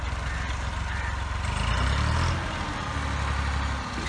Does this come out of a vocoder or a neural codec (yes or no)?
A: no